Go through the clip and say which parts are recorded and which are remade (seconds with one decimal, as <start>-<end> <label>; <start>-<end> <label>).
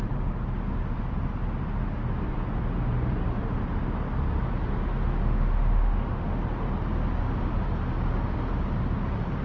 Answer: 0.0-5.2 recorded; 5.2-6.4 remade; 6.4-9.4 recorded